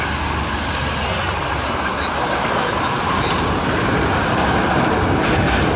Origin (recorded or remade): recorded